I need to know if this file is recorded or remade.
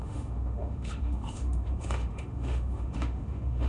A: remade